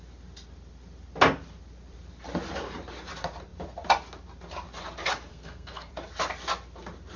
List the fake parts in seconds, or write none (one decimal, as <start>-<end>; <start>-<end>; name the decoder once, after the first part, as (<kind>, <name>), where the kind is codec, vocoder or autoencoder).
5.3-5.9 (codec, SNAC)